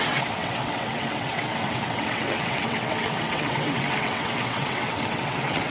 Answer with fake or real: fake